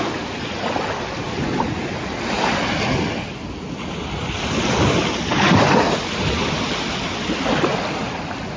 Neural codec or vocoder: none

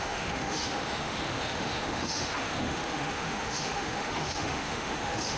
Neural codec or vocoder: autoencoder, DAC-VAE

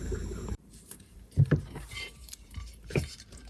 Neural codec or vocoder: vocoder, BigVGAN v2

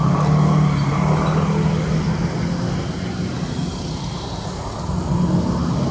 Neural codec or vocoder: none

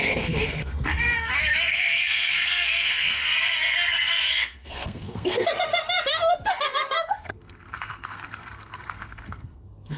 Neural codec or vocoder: codec, SNAC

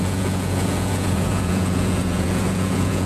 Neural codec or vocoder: vocoder, Vocos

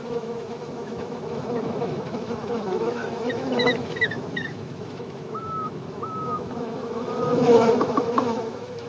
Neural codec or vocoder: autoencoder, DAC-VAE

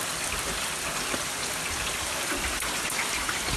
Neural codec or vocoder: none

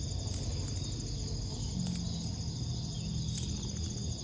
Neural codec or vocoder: none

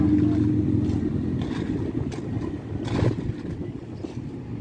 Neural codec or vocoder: none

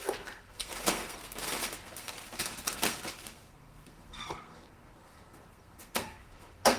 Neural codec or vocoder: codec, SNAC